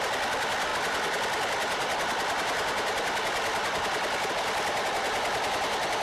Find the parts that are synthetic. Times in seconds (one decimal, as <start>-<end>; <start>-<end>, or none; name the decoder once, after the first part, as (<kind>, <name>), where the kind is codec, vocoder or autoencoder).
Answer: none